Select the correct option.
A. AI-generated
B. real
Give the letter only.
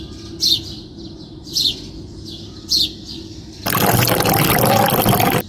B